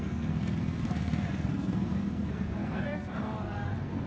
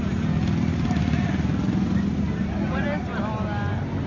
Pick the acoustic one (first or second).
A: second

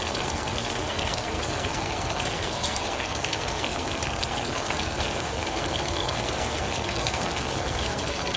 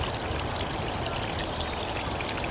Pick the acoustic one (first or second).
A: second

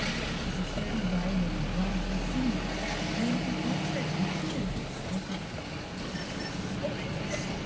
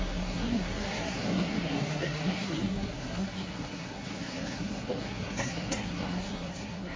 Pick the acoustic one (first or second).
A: first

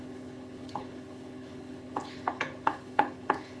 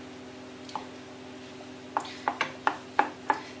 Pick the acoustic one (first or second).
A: second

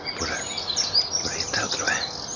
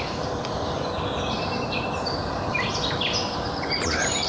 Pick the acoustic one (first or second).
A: first